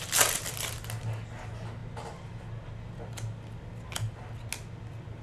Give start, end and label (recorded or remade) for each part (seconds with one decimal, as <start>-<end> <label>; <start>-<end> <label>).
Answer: 0.0-5.2 recorded